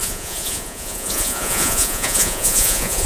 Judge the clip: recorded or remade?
remade